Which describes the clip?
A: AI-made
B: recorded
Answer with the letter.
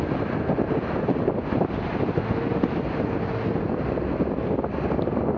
B